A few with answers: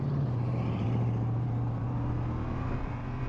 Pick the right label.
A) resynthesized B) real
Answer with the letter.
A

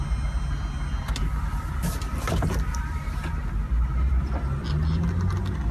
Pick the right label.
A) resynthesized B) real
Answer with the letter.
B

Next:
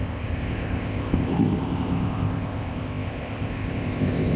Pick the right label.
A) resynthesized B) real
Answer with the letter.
A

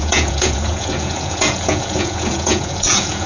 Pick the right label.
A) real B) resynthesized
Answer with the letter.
B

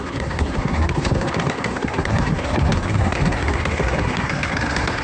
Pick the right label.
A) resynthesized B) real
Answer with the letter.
A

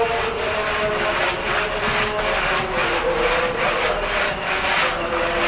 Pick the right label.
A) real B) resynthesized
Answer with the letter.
A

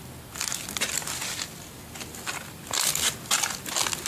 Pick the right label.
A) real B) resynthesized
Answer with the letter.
A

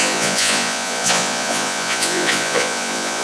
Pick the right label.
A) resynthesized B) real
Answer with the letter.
A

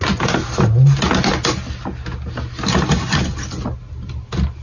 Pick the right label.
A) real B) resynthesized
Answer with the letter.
A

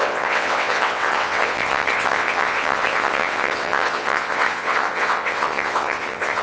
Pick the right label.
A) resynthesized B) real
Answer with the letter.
A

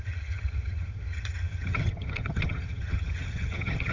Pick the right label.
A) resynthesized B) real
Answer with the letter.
A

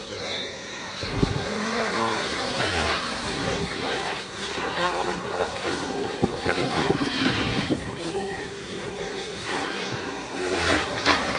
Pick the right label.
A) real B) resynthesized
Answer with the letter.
B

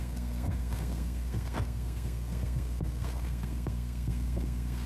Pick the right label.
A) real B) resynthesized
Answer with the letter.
B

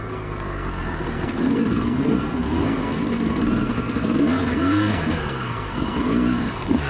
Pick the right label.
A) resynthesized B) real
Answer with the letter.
A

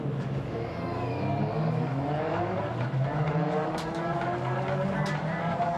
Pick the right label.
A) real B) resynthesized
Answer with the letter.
B